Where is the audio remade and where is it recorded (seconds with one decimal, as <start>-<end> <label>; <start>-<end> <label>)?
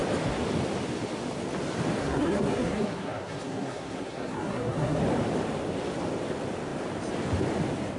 0.0-2.0 recorded; 2.0-5.0 remade; 5.0-8.0 recorded